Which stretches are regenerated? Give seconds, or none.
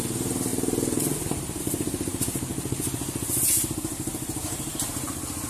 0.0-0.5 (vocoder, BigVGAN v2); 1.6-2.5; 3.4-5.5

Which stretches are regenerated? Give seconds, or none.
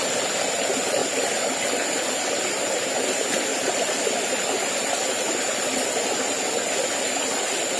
3.5-6.3 (vocoder, BigVGAN v2)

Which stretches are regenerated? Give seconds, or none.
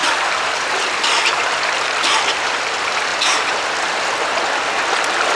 0.0-0.6 (vocoder, BigVGAN v2)